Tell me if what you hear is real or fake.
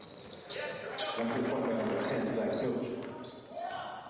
real